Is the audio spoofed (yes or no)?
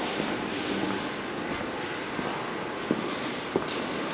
no